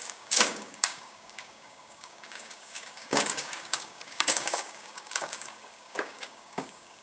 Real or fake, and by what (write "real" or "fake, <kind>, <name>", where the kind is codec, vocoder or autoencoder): fake, codec, DAC